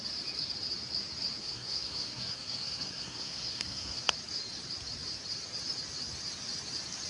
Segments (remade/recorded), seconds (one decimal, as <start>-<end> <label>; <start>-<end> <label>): 0.0-1.4 recorded; 1.4-4.0 remade; 4.0-7.1 recorded